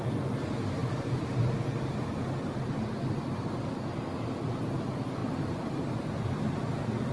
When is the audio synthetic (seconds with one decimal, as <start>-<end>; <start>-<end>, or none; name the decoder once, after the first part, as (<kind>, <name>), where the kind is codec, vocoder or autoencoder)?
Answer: none